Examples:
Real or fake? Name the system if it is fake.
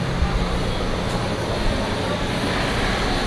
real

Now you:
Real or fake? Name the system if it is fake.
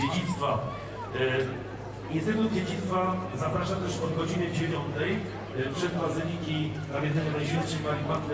real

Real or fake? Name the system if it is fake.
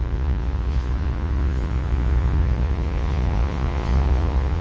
fake, vocoder, Vocos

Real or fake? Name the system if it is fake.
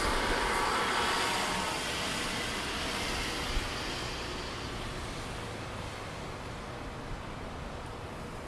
real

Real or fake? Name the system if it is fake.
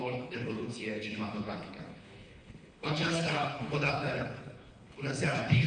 fake, codec, HILCodec